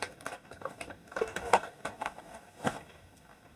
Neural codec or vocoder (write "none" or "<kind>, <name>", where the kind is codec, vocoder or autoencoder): codec, DAC